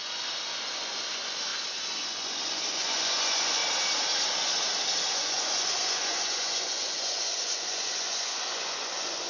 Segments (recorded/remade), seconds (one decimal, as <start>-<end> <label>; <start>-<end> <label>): 0.0-3.6 remade; 3.6-5.0 recorded; 5.0-9.3 remade